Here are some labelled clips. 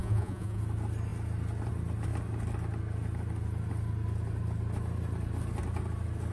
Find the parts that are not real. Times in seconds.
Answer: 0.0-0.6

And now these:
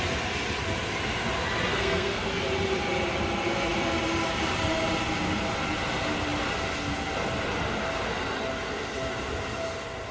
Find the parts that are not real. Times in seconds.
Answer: 1.7-2.3

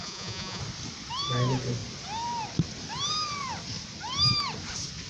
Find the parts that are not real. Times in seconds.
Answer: 0.0-0.6

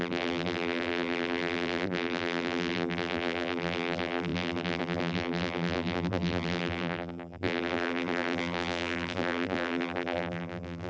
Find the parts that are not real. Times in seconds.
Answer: 0.0-10.9

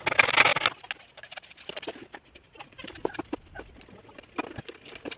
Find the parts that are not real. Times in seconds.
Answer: none

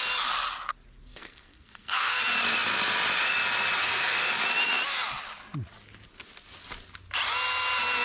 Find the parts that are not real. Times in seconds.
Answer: 1.1-2.2; 3.8-4.3

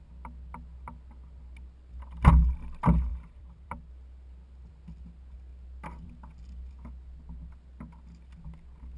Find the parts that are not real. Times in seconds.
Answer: 3.1-3.9